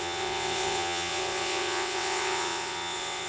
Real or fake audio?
fake